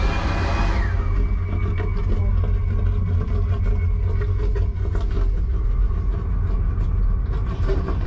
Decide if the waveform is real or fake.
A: real